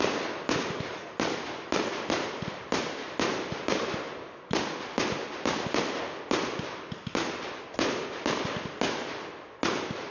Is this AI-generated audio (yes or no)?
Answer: no